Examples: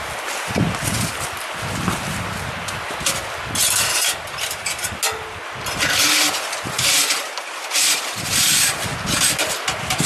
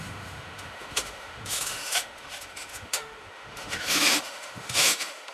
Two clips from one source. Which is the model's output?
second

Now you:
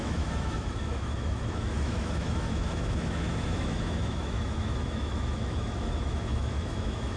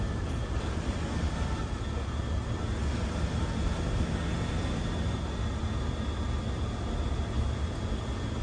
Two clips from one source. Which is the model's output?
first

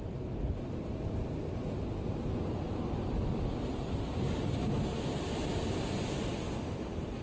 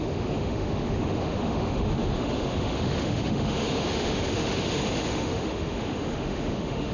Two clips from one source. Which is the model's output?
second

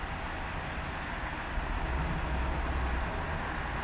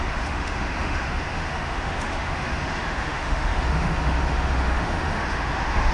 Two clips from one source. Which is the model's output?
second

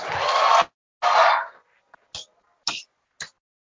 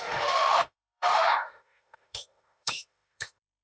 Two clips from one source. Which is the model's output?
second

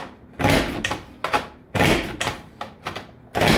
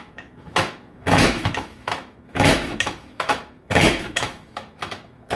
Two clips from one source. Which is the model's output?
second